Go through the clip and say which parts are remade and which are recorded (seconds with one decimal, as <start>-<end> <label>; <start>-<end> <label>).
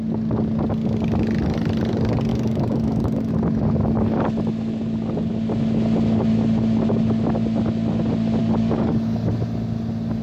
0.0-2.3 recorded; 2.3-3.3 remade; 3.3-8.4 recorded; 8.4-9.3 remade; 9.3-10.2 recorded